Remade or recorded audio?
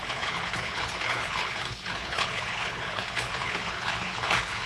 remade